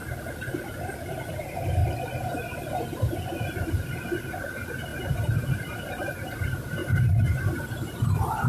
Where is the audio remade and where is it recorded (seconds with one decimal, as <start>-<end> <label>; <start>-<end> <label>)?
0.0-6.8 remade; 6.8-7.5 recorded; 7.5-8.5 remade